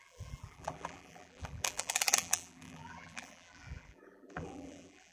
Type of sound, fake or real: fake